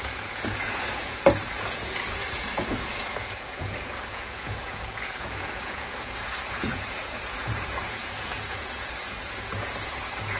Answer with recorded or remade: remade